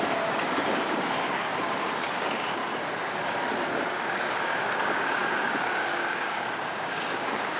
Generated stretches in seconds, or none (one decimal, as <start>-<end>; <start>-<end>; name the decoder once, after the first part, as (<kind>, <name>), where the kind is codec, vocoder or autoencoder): 0.0-1.5 (codec, DAC); 2.1-2.6; 3.9-7.6